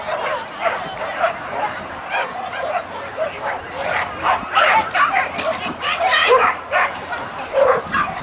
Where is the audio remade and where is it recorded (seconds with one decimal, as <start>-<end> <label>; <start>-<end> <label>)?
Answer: 0.0-2.2 recorded; 2.2-2.8 remade; 2.8-8.2 recorded